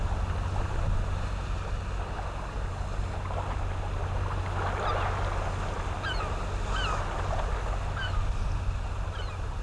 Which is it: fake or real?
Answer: real